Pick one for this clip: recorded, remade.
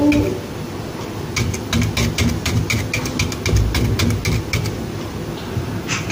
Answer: recorded